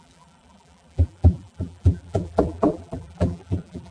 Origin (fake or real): fake